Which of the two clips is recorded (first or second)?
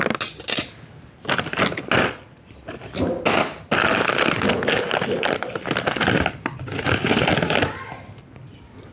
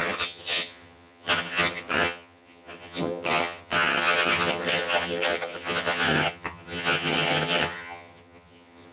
first